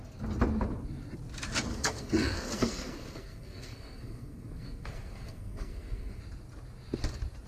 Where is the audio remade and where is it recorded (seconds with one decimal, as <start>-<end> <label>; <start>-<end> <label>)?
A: 0.0-1.7 recorded; 1.7-6.2 remade; 6.2-7.5 recorded

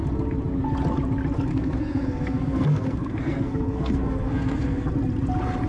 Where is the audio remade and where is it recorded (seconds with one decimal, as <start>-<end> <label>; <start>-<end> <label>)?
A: 0.0-1.5 recorded; 1.5-4.9 remade; 4.9-5.7 recorded

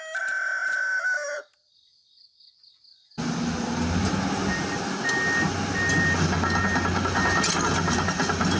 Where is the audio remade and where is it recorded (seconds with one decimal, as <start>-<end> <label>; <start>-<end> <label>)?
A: 0.0-8.6 recorded

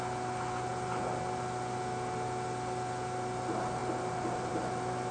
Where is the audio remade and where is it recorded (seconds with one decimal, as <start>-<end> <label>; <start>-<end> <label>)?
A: 0.0-5.1 recorded

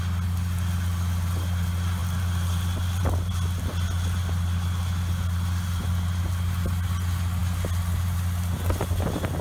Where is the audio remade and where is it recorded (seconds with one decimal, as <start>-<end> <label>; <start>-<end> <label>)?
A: 0.0-9.4 recorded

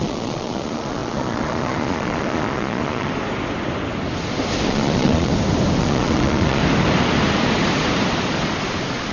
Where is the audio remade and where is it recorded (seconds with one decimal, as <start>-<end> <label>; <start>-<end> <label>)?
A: 0.0-3.1 remade; 3.1-4.7 recorded; 4.7-5.3 remade; 5.3-5.8 recorded; 5.8-6.6 remade; 6.6-9.1 recorded